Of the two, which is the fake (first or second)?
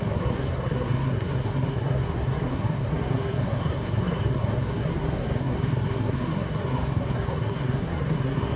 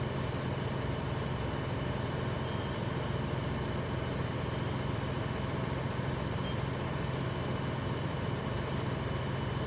first